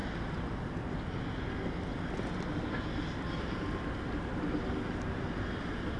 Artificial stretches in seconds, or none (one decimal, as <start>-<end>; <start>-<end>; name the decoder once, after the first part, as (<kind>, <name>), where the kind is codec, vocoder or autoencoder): none